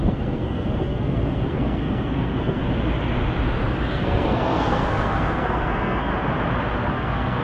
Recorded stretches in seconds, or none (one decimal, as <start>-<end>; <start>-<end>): 2.6-3.9; 6.1-6.9